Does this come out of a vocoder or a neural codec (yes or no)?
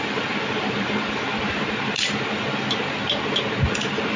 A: no